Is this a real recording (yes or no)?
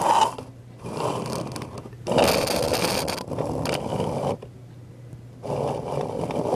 yes